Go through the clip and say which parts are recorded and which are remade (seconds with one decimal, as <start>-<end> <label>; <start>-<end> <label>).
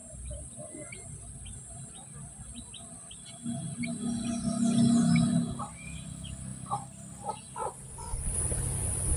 0.0-1.9 remade; 1.9-9.2 recorded